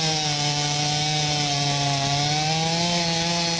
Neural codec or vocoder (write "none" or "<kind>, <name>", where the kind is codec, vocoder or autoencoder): none